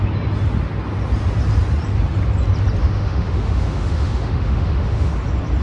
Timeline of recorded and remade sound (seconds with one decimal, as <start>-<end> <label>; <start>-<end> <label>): 0.0-2.8 recorded; 2.8-5.1 remade; 5.1-5.6 recorded